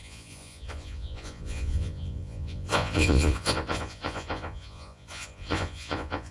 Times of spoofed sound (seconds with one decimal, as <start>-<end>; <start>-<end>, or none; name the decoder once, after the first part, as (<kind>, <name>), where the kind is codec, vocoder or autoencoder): 0.0-6.3 (vocoder, Vocos)